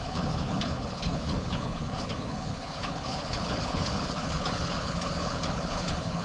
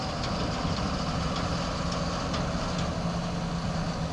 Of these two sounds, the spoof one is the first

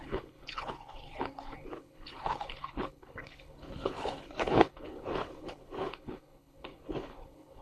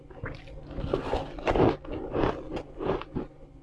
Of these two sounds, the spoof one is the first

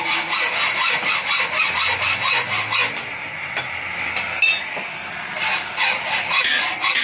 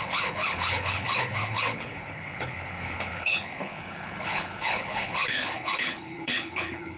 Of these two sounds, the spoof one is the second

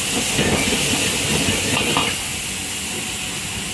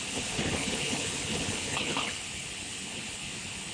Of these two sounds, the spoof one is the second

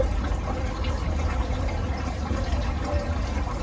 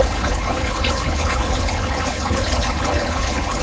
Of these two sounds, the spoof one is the second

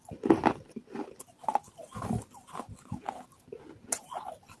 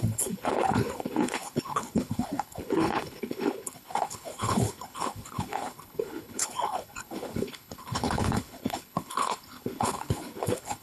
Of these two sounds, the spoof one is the second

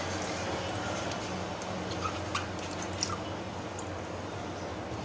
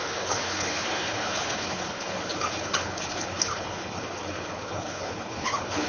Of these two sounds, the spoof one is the second